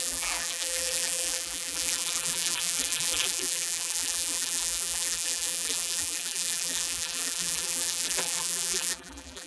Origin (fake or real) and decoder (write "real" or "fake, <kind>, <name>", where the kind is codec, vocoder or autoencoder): fake, vocoder, BigVGAN v2